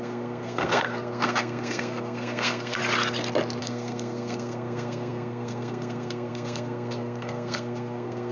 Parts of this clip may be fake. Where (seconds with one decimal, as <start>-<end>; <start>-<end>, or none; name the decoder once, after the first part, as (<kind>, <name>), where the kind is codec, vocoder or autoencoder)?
0.0-2.8 (codec, SNAC); 3.6-8.3